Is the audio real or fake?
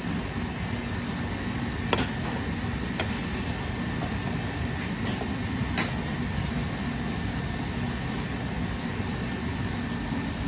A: real